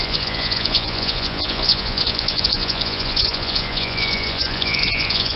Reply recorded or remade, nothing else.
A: remade